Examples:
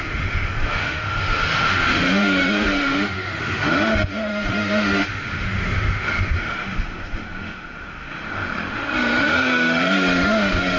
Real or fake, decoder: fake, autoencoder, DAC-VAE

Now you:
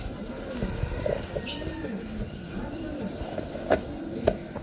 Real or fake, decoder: real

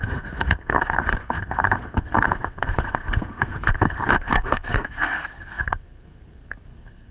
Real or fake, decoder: fake, codec, SNAC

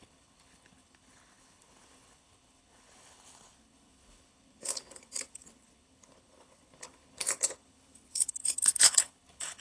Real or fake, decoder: fake, codec, HILCodec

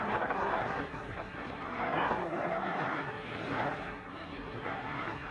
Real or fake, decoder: fake, codec, SNAC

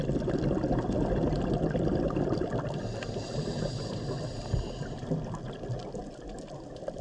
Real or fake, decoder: real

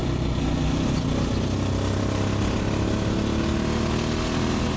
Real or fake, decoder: real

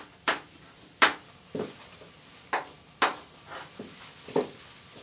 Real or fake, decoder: real